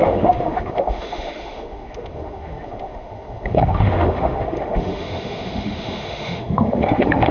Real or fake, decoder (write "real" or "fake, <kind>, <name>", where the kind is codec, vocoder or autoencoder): fake, autoencoder, DAC-VAE